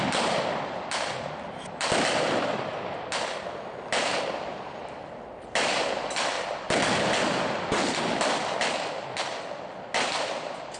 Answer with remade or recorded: recorded